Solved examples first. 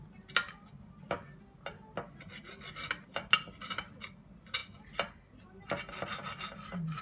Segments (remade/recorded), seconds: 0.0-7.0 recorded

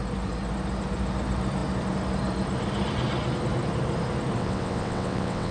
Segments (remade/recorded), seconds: 0.0-4.4 recorded; 4.4-5.5 remade

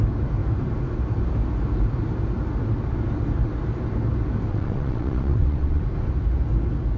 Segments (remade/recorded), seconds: 0.0-4.5 recorded; 4.5-5.8 remade; 5.8-7.0 recorded

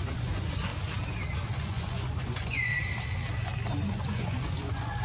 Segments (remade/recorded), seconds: 0.0-0.7 remade; 0.7-1.6 recorded; 1.6-2.7 remade; 2.7-3.9 recorded; 3.9-5.0 remade

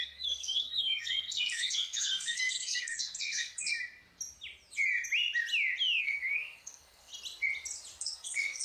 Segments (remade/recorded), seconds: 0.0-3.7 remade; 3.7-6.0 recorded; 6.0-7.1 remade; 7.1-8.0 recorded; 8.0-8.6 remade